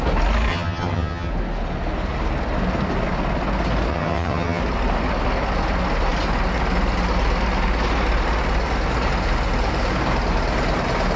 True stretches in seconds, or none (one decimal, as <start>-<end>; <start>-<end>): 0.0-0.5; 1.3-3.9; 4.6-11.2